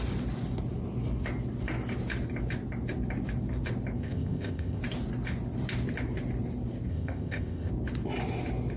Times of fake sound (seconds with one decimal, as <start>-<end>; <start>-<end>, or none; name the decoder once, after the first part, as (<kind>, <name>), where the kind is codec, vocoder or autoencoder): 4.0-4.8 (codec, ZipCodec); 6.9-7.7